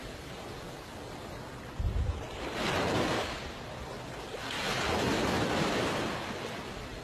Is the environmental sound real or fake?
real